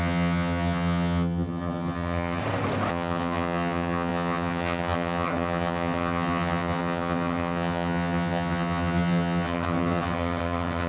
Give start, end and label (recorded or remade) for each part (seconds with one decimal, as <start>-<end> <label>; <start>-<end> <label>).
0.0-2.4 remade; 2.4-2.9 recorded; 2.9-10.9 remade